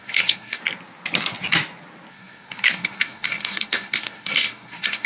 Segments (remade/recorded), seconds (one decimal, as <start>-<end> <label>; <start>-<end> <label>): 0.0-0.6 remade; 0.6-2.1 recorded; 2.1-5.1 remade